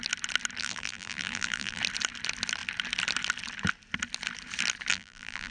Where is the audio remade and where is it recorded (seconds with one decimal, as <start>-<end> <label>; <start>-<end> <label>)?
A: 0.0-0.6 recorded; 0.6-1.8 remade; 1.8-4.9 recorded; 4.9-5.5 remade